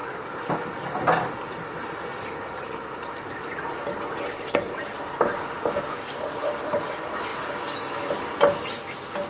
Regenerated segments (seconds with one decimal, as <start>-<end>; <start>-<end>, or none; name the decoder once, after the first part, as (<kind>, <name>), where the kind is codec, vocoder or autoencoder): none